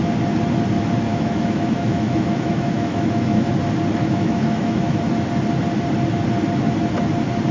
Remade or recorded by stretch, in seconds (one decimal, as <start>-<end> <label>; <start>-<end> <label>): 0.0-1.1 recorded; 1.1-3.5 remade; 3.5-4.0 recorded; 4.0-5.0 remade; 5.0-7.5 recorded